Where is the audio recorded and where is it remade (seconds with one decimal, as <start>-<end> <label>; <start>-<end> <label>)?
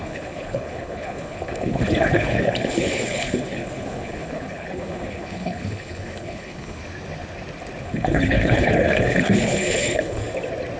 0.0-6.8 remade; 6.8-7.8 recorded; 7.8-10.2 remade; 10.2-10.8 recorded